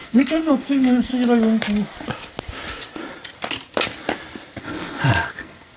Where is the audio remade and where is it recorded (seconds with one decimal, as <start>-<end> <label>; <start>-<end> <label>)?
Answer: 0.0-1.1 remade; 1.1-4.6 recorded; 4.6-5.8 remade